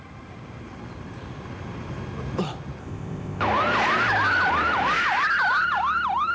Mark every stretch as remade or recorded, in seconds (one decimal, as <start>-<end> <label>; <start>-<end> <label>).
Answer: 0.0-2.8 recorded; 2.8-3.4 remade; 3.4-6.3 recorded

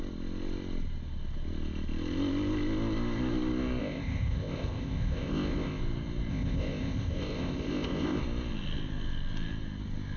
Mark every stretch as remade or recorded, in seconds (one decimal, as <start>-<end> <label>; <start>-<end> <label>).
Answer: 0.0-3.8 recorded; 3.8-5.8 remade; 5.8-6.3 recorded; 6.3-8.2 remade; 8.2-10.2 recorded

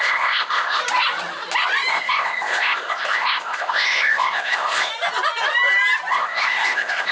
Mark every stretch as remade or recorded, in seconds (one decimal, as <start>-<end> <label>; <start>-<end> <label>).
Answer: 0.0-0.8 remade; 0.8-1.9 recorded; 1.9-4.9 remade; 4.9-6.1 recorded; 6.1-7.1 remade